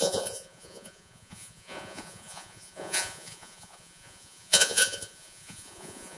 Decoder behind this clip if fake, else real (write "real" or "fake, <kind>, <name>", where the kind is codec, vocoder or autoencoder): fake, vocoder, Vocos